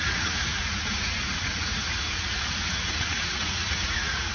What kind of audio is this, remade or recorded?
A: remade